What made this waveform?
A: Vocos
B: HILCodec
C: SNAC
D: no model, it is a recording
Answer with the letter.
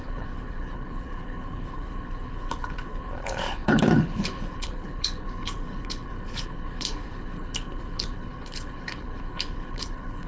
B